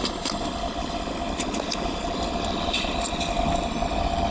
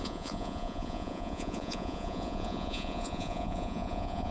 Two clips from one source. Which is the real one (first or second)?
first